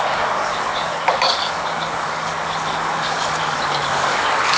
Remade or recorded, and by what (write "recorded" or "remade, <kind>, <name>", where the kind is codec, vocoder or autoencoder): remade, codec, DAC